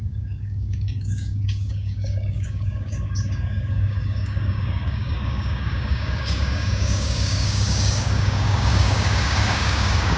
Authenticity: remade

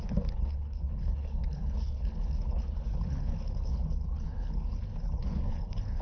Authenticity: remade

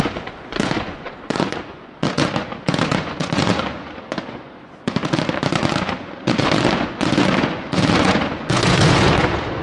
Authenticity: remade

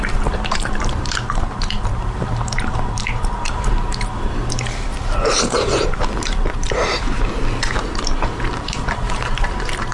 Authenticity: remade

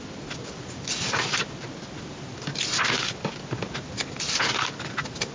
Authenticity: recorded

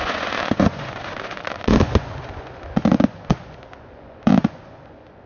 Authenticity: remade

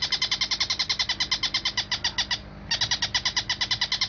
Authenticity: recorded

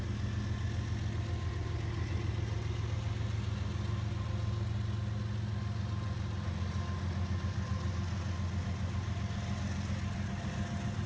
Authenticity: recorded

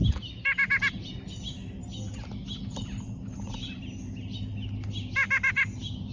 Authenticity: recorded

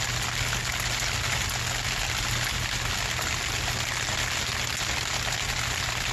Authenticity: recorded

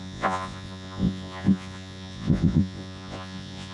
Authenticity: remade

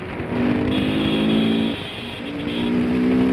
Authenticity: recorded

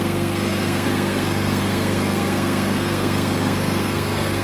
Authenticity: remade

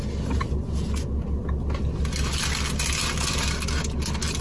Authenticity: recorded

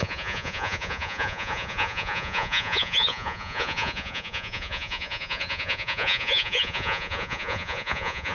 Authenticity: remade